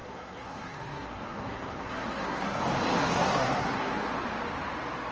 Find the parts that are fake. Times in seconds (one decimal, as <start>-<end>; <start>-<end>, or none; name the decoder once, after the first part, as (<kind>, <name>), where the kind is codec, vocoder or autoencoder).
0.0-2.6 (codec, SNAC); 3.0-4.1